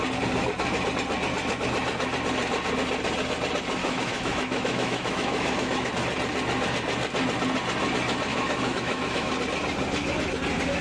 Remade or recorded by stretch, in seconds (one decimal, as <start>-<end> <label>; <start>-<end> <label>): 0.0-3.8 recorded; 3.8-5.9 remade; 5.9-8.3 recorded; 8.3-9.3 remade; 9.3-10.8 recorded